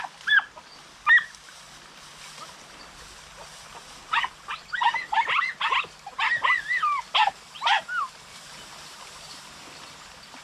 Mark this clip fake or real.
real